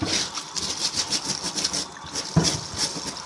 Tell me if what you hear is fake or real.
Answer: real